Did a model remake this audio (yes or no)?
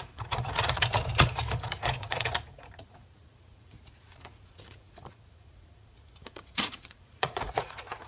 yes